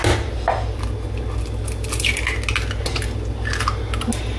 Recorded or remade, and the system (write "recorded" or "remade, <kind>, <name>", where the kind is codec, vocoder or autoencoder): recorded